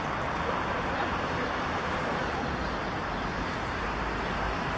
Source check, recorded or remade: recorded